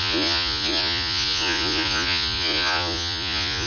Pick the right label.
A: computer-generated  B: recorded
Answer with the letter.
A